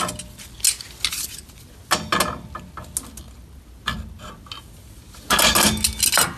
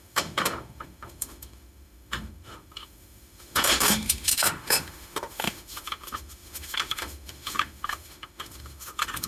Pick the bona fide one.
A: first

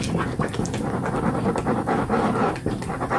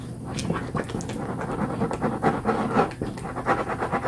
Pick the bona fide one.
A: second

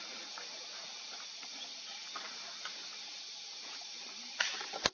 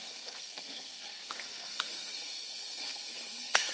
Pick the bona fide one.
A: first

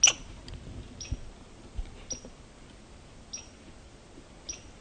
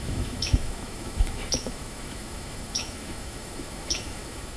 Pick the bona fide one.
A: first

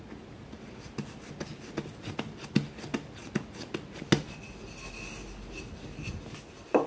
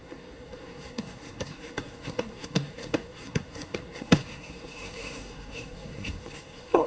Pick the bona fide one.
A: first